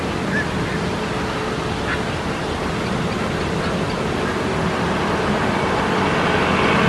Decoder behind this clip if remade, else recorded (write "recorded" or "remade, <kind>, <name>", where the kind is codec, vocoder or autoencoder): recorded